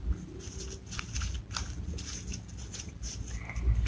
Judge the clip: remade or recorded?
recorded